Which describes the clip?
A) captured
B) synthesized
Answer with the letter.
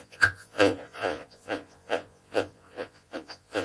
B